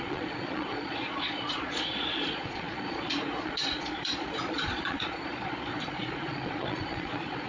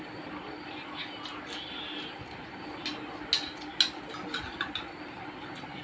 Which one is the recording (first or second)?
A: second